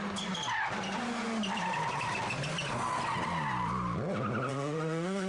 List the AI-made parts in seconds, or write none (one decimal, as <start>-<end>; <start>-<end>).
4.5-5.3